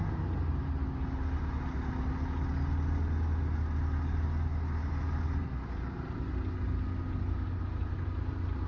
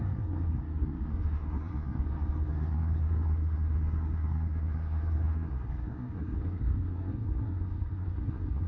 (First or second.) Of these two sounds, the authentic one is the first